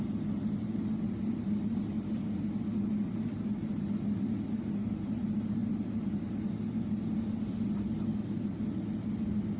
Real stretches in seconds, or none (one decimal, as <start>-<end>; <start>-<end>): 0.0-9.6